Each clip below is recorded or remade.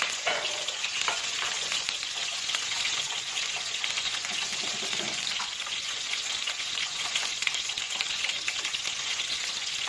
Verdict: remade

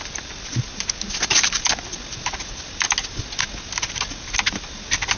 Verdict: recorded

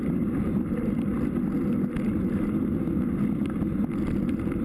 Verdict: recorded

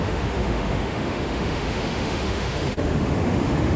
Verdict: remade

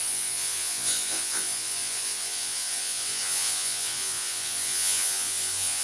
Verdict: remade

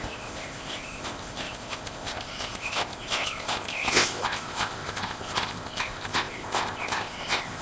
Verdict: remade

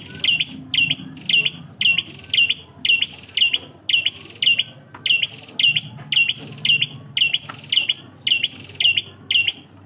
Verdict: recorded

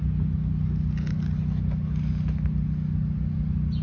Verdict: recorded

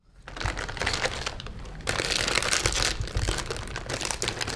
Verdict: recorded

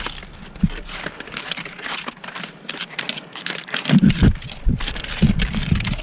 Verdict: remade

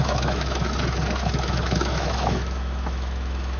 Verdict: remade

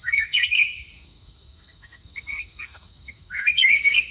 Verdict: remade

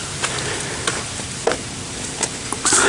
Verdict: recorded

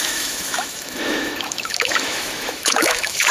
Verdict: remade